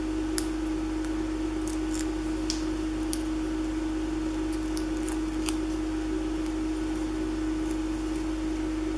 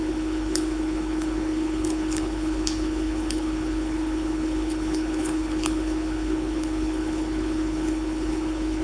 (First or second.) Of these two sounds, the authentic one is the first